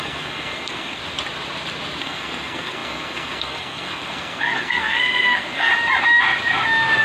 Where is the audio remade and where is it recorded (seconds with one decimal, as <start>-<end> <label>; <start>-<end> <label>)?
0.0-1.0 remade; 1.0-2.0 recorded; 2.0-5.7 remade; 5.7-7.0 recorded

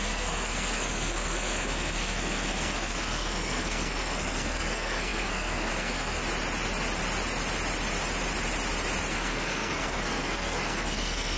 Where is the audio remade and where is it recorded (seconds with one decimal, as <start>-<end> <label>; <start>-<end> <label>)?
0.0-6.2 remade; 6.2-9.1 recorded; 9.1-11.4 remade